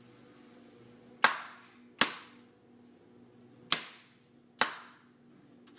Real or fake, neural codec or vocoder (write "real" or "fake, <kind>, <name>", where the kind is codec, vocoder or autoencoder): real